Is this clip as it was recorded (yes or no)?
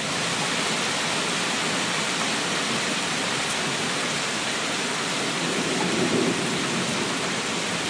yes